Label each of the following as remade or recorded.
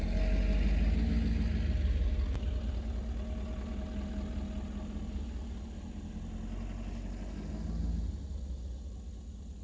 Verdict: recorded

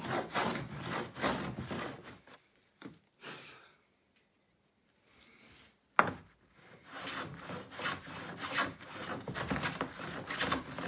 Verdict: recorded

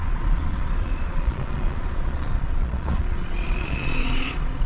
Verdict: remade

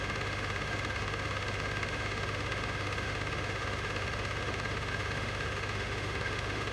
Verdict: remade